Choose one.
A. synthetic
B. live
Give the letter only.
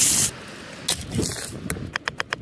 B